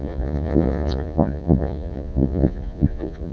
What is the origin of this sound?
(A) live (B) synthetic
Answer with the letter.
B